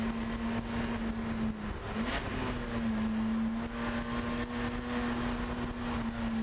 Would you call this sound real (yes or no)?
yes